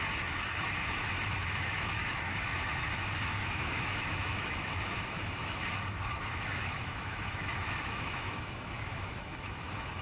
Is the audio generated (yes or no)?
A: yes